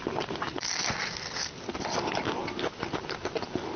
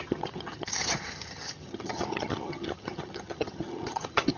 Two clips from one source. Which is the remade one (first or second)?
second